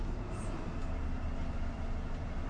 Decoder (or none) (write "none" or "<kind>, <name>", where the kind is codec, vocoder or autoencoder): none